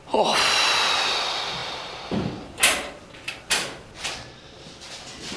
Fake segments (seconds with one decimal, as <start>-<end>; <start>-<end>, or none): 1.6-2.3